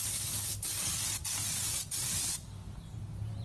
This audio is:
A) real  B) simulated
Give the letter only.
A